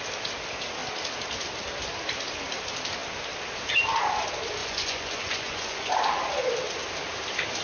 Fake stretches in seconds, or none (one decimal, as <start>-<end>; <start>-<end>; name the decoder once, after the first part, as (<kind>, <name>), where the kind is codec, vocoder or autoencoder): 4.6-5.9 (vocoder, Vocos)